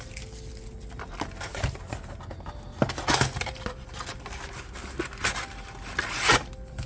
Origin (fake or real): real